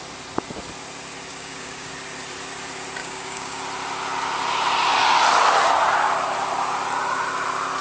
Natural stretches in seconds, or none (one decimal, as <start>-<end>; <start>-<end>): 0.0-1.3; 1.9-3.0; 3.6-7.8